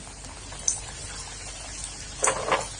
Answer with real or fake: real